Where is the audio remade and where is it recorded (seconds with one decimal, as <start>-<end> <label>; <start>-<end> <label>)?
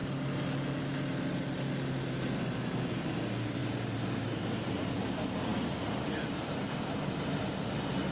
0.0-3.6 recorded; 3.6-4.5 remade; 4.5-5.5 recorded; 5.5-6.5 remade; 6.5-8.1 recorded